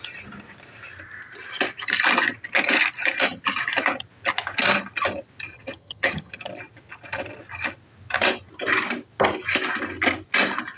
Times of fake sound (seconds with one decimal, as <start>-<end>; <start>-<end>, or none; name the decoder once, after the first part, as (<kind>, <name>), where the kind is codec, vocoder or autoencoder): 5.5-6.4 (vocoder, HiFi-GAN)